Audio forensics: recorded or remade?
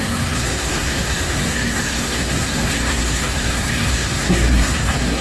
remade